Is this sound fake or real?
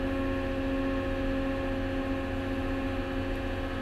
real